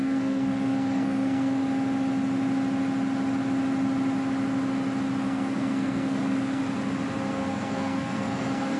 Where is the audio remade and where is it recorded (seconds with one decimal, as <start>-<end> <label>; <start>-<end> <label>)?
0.0-1.6 remade; 1.6-5.2 recorded; 5.2-6.6 remade; 6.6-7.3 recorded; 7.3-8.8 remade